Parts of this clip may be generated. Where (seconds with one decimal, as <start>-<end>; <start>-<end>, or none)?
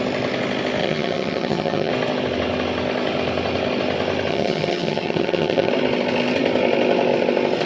0.8-1.9; 4.3-5.7